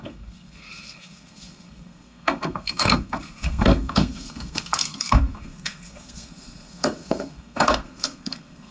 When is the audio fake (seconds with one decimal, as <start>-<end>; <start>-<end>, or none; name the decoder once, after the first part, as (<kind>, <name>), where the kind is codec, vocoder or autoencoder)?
0.0-8.7 (codec, SNAC)